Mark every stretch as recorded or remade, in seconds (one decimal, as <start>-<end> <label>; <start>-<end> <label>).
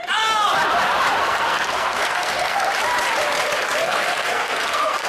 0.0-1.2 recorded; 1.2-2.7 remade; 2.7-3.8 recorded; 3.8-5.1 remade